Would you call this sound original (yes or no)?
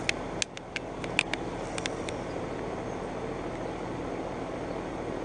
yes